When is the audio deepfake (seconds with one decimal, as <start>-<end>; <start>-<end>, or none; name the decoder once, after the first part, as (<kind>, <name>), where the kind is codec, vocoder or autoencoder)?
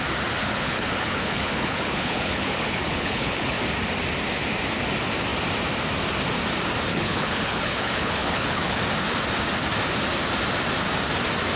0.4-3.6 (codec, HILCodec); 6.9-8.8